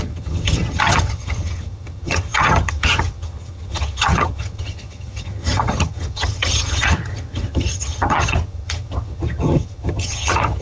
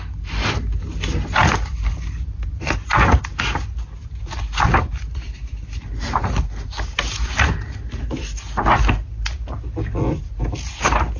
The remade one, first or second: first